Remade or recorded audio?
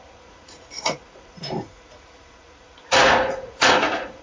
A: remade